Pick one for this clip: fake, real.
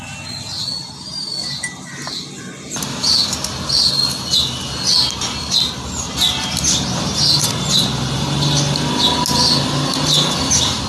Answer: real